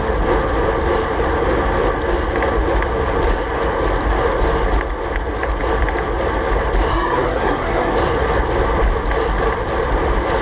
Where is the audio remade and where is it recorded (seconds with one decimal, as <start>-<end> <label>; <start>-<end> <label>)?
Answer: 0.0-6.9 recorded; 6.9-7.9 remade; 7.9-10.4 recorded